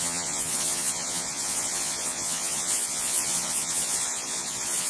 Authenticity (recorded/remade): remade